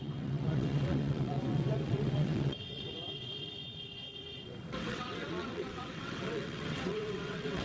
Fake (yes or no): yes